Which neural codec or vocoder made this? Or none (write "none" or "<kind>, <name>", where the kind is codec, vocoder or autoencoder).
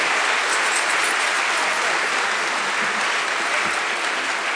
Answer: none